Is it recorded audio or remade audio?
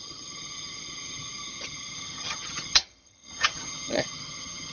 remade